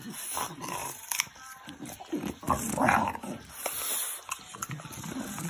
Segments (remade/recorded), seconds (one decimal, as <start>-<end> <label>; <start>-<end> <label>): 0.0-0.8 recorded; 0.8-1.7 remade; 1.7-4.6 recorded; 4.6-5.1 remade; 5.1-5.5 recorded